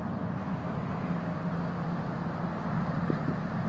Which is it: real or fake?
real